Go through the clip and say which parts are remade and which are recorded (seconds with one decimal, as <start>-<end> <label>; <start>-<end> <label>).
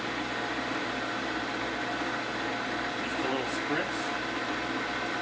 0.0-5.2 recorded